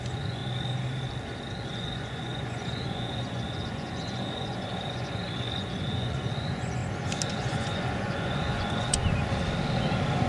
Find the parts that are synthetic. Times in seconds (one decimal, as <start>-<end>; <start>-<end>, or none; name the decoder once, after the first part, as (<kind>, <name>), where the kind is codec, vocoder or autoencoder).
0.0-0.4 (vocoder, Vocos); 1.7-6.8; 7.3-9.0